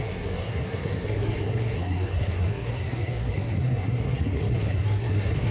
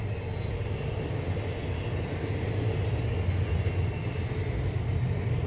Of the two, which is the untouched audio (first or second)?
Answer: second